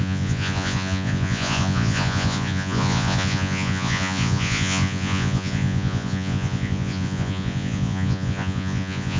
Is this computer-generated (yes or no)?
yes